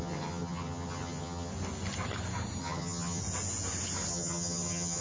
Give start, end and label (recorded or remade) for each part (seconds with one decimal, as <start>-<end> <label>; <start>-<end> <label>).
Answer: 0.0-1.5 remade; 1.5-2.6 recorded; 2.6-3.2 remade; 3.2-4.1 recorded; 4.1-5.0 remade